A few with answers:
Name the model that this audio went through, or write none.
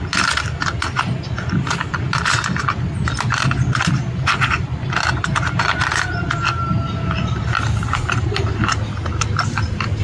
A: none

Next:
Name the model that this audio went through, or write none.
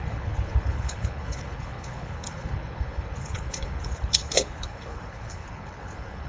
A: codec, HILCodec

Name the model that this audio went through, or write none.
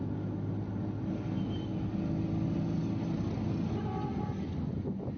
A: none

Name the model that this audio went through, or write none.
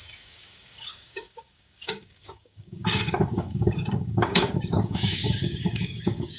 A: codec, DAC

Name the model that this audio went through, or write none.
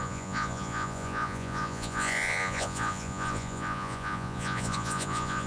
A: vocoder, Vocos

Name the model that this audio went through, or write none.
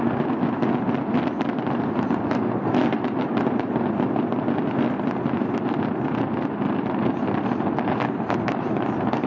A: none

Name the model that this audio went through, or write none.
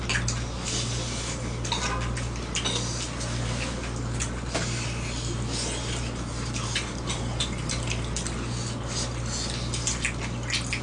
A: none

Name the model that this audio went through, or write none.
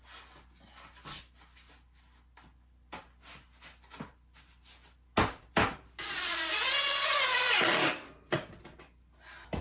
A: none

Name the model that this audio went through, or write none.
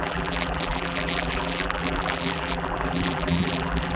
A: vocoder, BigVGAN v2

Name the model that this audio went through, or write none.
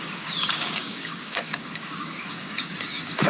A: codec, DAC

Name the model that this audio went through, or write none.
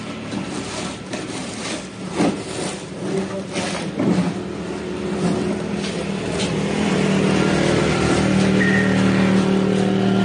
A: none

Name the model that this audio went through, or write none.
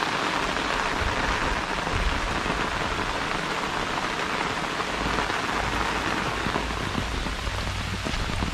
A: none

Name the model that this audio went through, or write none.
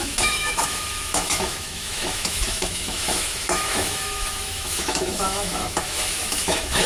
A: autoencoder, DAC-VAE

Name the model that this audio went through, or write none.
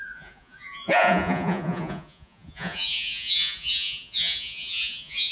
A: vocoder, Vocos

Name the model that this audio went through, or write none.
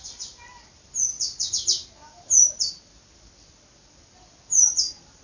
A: none